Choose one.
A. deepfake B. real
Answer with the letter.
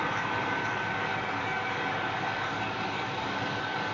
A